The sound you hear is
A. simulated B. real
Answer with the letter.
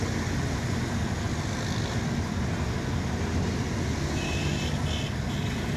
B